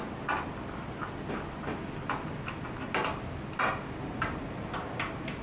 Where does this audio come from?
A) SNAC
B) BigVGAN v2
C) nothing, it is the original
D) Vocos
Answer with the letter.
C